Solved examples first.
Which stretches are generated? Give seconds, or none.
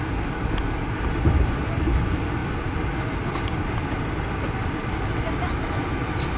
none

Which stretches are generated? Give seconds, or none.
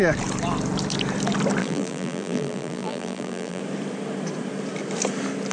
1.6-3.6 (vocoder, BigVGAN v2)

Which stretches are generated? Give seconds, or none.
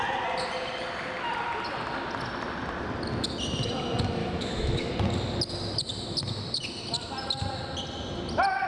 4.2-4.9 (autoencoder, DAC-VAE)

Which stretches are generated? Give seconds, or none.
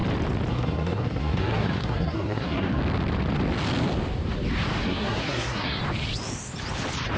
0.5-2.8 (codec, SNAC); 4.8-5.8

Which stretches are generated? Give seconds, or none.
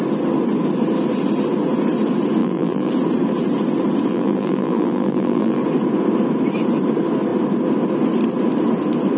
2.4-2.9 (vocoder, BigVGAN v2); 4.1-5.6